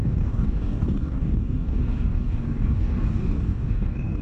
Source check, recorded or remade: remade